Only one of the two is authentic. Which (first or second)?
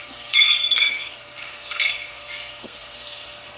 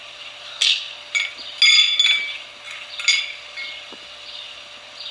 second